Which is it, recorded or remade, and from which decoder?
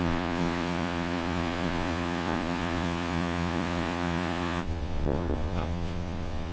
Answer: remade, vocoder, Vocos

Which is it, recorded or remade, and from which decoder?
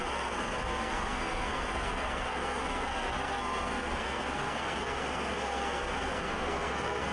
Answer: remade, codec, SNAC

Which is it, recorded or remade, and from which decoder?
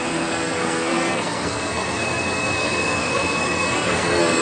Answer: remade, codec, SNAC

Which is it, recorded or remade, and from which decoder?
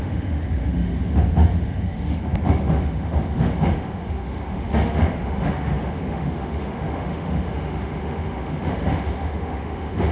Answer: remade, autoencoder, DAC-VAE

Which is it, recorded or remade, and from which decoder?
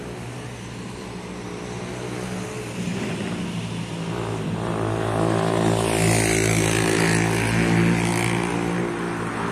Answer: recorded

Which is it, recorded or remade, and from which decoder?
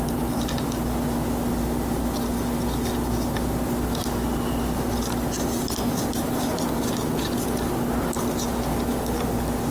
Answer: recorded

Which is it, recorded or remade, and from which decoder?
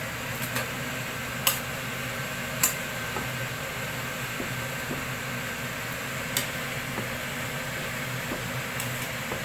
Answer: recorded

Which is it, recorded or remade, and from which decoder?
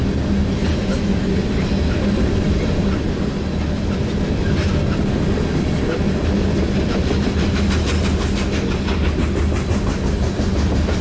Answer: recorded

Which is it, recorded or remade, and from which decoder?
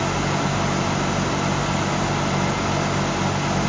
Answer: recorded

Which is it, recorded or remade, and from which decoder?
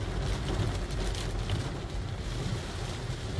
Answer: recorded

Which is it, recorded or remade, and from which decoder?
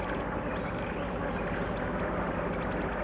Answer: recorded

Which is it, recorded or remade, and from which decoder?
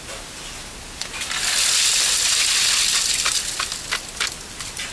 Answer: recorded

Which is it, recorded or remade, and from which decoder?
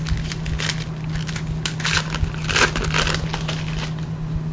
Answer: recorded